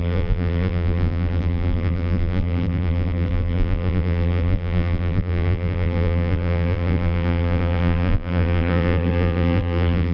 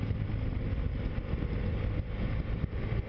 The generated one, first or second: first